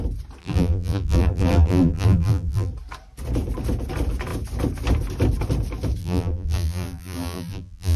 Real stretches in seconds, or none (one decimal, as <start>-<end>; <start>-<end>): 0.0-0.4; 2.7-6.0